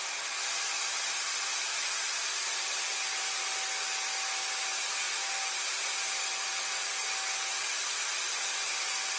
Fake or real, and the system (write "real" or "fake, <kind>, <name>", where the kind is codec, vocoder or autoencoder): real